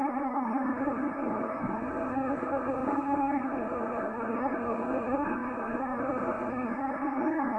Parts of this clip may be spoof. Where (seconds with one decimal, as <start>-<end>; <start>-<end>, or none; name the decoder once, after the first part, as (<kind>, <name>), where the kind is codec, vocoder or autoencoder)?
0.0-7.6 (codec, SNAC)